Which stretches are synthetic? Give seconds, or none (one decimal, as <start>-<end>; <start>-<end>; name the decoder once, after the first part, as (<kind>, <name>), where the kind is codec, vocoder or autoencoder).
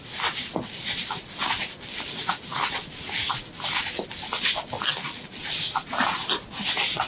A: none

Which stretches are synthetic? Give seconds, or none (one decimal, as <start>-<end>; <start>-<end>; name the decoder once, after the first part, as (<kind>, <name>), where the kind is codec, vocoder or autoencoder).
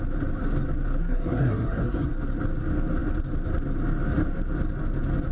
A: 1.0-2.1 (codec, SNAC)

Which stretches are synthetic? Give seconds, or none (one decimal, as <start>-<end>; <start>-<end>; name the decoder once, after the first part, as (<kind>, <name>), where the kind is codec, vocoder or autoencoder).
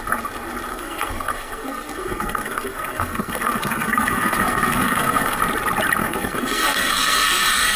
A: 0.7-5.4 (codec, SNAC); 6.0-7.8